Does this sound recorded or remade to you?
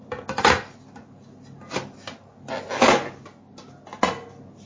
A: recorded